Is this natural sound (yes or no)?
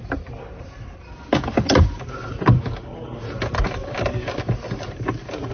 yes